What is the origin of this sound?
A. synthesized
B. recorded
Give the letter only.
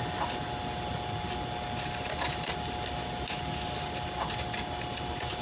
B